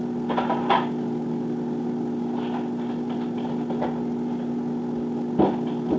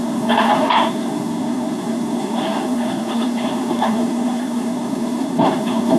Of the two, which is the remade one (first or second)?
second